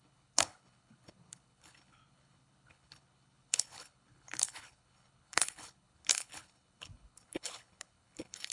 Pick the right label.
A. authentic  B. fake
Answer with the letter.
B